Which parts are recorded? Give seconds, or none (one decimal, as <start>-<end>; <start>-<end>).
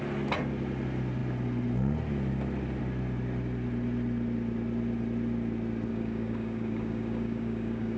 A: 0.0-5.9